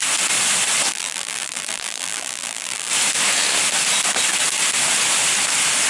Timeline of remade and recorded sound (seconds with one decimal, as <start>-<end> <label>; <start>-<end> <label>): 0.0-0.9 recorded; 0.9-2.9 remade; 2.9-5.9 recorded